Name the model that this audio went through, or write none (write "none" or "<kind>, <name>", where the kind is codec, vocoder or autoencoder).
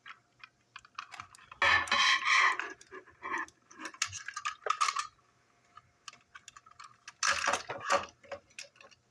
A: none